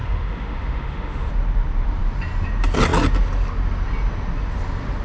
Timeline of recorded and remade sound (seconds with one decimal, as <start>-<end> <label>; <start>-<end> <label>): 0.0-1.3 remade; 1.3-5.0 recorded